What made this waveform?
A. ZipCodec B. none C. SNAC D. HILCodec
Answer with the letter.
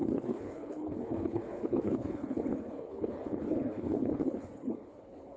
D